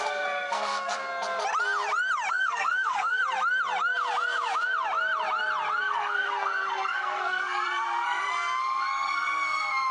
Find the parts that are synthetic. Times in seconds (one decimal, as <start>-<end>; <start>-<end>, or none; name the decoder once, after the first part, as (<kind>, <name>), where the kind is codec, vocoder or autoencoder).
0.0-1.0 (codec, SNAC); 2.3-3.2; 5.8-9.9